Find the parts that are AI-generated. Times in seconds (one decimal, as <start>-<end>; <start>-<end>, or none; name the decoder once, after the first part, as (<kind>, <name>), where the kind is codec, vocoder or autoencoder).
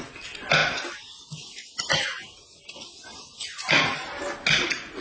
none